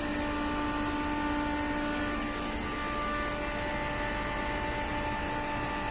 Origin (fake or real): real